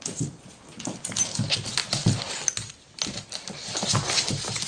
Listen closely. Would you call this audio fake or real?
real